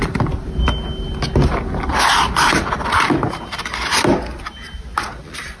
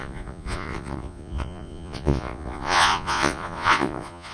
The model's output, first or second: second